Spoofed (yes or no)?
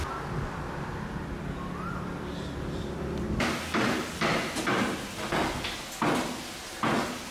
no